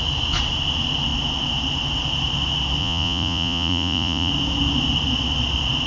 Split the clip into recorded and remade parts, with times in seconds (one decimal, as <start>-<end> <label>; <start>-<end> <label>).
0.0-2.8 recorded; 2.8-4.3 remade; 4.3-5.9 recorded